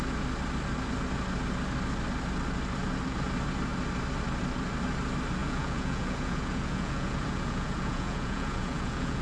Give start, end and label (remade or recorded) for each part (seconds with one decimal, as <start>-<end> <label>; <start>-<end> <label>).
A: 0.0-5.4 recorded; 5.4-9.2 remade